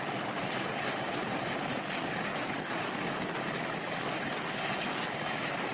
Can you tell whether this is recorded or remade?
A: recorded